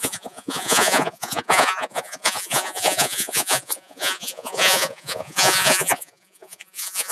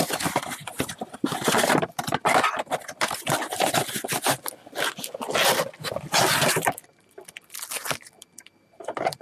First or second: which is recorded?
second